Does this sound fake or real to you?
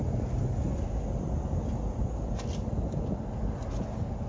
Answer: real